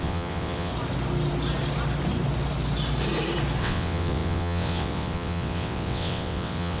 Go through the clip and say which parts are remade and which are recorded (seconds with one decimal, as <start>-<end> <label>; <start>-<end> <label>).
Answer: 0.0-0.7 remade; 0.7-3.6 recorded; 3.6-6.8 remade